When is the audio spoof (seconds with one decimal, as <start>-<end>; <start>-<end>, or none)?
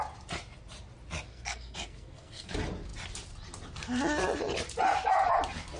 1.3-2.5